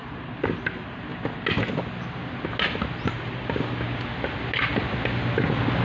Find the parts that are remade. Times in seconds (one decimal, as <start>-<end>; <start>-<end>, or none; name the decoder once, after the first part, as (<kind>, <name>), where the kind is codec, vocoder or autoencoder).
none